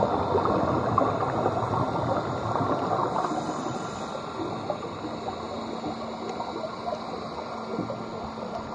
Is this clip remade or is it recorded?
recorded